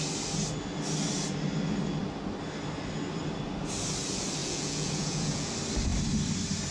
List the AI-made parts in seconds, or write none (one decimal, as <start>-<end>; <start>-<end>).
4.4-5.5